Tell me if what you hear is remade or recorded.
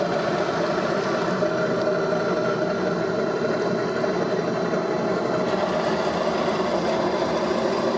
recorded